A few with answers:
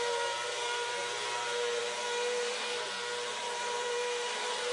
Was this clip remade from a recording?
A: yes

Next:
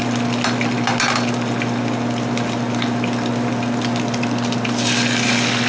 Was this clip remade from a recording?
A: no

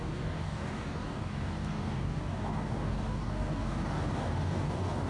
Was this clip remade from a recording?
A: yes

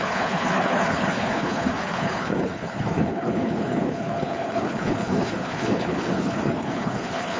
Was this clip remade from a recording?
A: yes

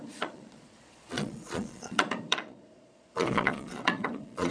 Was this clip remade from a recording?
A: yes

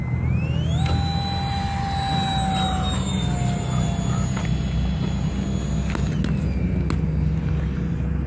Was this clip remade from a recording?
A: no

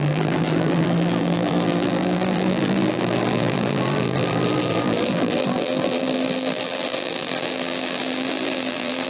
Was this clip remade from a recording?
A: yes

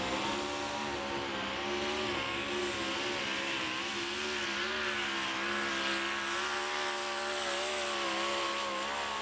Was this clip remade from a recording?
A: no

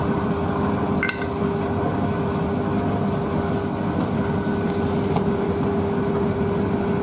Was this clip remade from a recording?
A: no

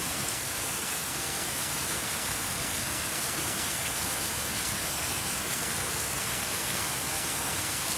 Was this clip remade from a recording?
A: yes